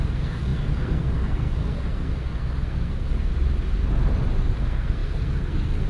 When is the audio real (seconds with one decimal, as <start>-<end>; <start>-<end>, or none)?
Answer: 3.3-4.6

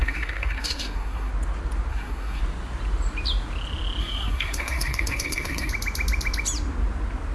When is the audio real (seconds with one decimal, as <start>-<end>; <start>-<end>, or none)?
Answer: 1.3-1.9; 2.4-4.0; 5.7-7.3

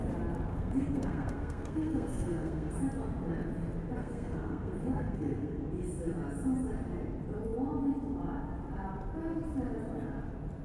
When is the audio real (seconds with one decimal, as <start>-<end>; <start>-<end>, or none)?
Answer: 0.0-0.5; 2.8-4.0; 5.6-10.6